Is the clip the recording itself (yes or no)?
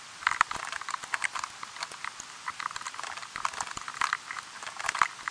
yes